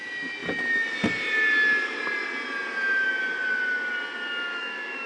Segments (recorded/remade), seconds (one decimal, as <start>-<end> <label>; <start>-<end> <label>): 0.0-4.5 recorded; 4.5-5.1 remade